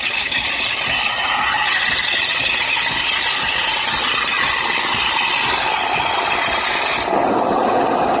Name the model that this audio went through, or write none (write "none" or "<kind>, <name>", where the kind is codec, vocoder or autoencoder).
none